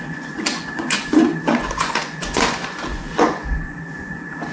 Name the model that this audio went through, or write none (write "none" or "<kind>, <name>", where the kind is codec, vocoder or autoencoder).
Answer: vocoder, Vocos